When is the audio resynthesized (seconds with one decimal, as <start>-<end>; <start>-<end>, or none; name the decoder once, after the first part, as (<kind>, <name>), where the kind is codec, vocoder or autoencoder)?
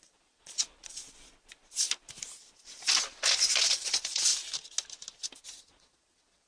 0.0-1.0 (vocoder, Vocos); 3.6-4.3; 5.6-6.5